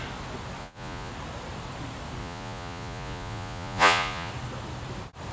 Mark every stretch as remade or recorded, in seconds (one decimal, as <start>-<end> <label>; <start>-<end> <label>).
0.0-0.6 recorded; 0.6-1.1 remade; 1.1-2.2 recorded; 2.2-4.3 remade; 4.3-5.3 recorded